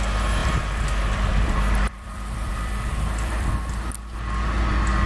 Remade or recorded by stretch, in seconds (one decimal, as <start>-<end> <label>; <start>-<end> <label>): 0.0-0.4 recorded; 0.4-3.5 remade; 3.5-5.1 recorded